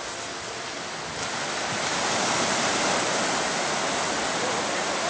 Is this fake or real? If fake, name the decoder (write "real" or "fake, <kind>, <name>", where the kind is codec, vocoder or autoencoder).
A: real